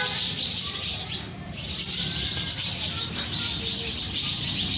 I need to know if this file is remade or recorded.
remade